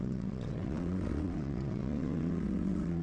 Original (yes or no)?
no